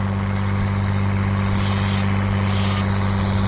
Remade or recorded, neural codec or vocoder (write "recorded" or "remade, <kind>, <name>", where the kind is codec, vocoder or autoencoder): recorded